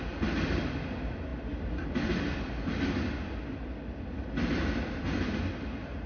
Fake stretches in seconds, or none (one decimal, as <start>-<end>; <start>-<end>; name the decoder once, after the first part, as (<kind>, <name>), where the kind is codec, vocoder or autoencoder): none